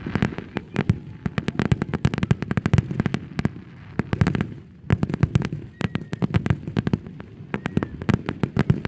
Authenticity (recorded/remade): recorded